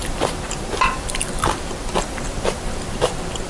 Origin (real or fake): fake